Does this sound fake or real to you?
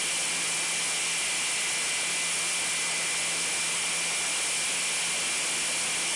real